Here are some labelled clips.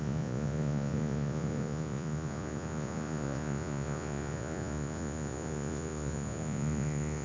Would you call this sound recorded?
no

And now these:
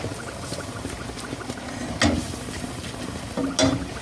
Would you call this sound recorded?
yes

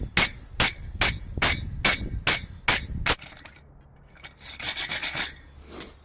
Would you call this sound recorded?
yes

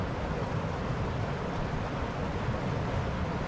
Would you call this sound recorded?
yes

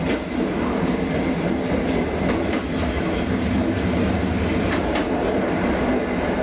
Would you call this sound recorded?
yes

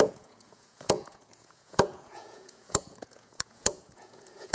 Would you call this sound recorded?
no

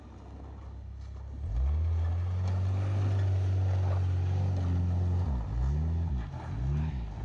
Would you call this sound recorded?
yes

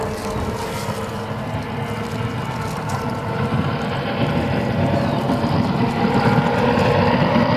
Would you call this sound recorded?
yes